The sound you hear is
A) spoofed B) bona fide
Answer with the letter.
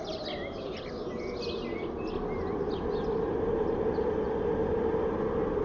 B